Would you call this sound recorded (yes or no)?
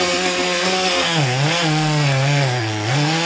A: no